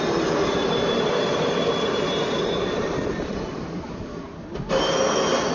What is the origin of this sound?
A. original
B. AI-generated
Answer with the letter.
A